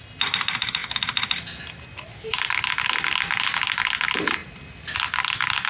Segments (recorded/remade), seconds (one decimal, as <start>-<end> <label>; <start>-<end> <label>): 0.0-5.7 recorded